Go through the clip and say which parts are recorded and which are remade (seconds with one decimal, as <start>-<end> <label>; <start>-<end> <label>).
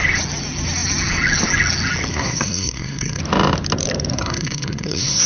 0.0-2.1 recorded; 2.1-3.2 remade; 3.2-4.1 recorded; 4.1-5.3 remade